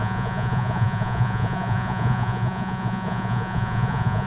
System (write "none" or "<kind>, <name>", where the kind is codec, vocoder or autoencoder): vocoder, Vocos